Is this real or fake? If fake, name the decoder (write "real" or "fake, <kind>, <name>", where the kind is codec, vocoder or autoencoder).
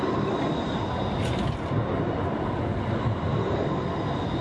real